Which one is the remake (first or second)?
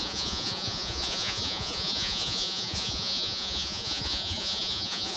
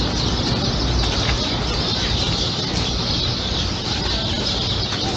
first